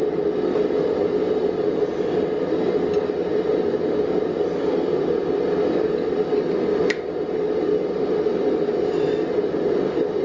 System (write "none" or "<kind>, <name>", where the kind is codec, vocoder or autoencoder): none